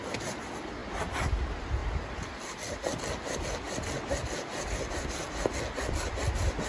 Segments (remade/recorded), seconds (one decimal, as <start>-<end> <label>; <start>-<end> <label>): 0.0-6.7 recorded